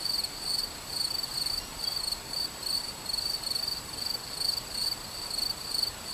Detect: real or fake real